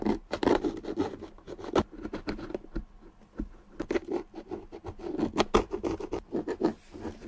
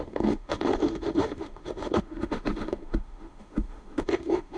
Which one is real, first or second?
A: first